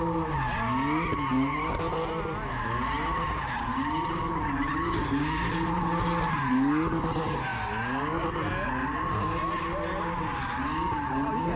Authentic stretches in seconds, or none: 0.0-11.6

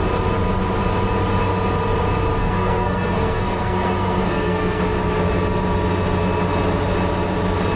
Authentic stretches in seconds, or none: 0.0-2.4; 4.8-7.8

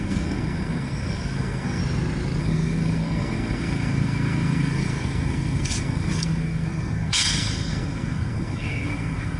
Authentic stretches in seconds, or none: 1.8-2.4

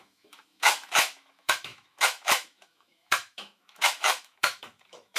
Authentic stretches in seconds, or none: none

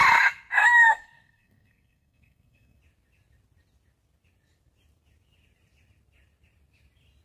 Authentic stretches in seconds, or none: 0.0-0.6; 2.8-7.2

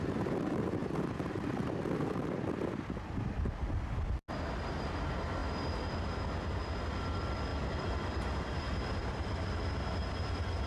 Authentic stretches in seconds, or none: 0.0-0.8; 2.4-7.5; 9.7-10.7